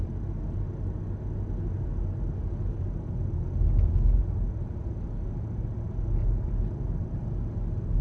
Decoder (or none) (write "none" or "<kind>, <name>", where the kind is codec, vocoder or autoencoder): none